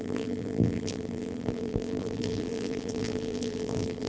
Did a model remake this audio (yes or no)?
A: yes